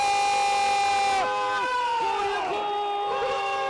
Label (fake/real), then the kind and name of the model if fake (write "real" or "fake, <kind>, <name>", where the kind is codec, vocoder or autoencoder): real